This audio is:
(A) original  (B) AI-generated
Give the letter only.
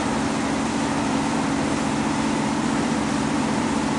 B